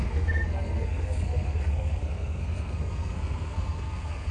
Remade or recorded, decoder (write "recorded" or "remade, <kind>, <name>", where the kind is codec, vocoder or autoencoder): remade, codec, SNAC